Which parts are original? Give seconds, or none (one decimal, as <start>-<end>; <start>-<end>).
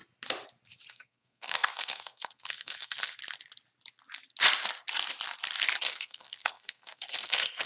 0.0-0.9; 3.2-5.8